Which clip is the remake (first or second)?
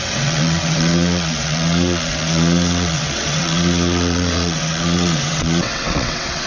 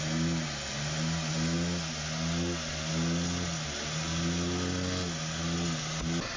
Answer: first